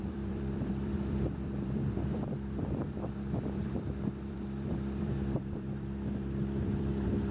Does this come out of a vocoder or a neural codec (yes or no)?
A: yes